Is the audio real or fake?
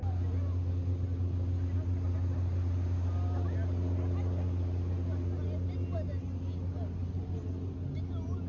real